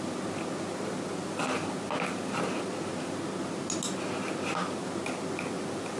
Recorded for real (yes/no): yes